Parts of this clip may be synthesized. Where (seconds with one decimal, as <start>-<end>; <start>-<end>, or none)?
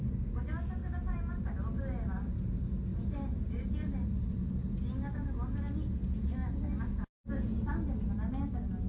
0.8-1.4; 2.9-3.7; 6.0-6.6